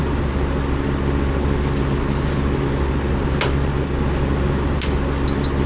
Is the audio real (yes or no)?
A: yes